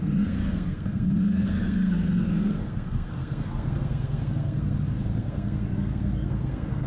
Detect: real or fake fake